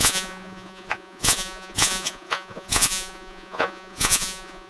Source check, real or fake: fake